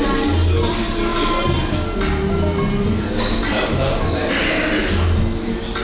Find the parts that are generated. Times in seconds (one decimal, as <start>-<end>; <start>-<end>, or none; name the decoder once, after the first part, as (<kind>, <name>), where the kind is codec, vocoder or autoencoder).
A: none